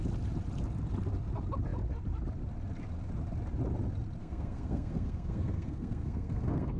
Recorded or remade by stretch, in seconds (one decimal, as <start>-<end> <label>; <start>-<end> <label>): 0.0-4.2 recorded; 4.2-6.8 remade